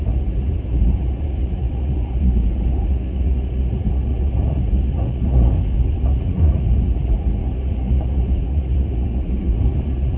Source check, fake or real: fake